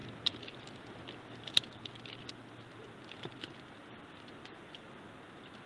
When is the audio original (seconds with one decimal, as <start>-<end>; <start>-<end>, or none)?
0.0-4.4; 5.0-5.7